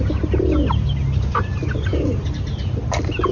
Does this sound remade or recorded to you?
recorded